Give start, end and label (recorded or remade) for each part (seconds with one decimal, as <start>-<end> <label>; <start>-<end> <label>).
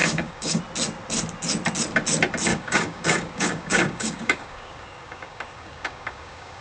0.0-0.6 remade; 0.6-2.5 recorded; 2.5-6.6 remade